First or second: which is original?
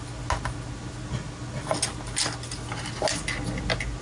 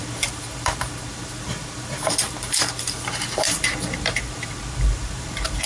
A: first